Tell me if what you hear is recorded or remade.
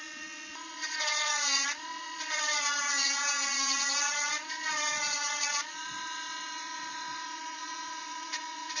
remade